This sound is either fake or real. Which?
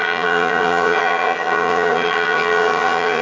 fake